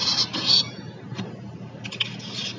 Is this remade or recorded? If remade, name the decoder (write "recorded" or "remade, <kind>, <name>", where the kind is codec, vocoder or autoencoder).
recorded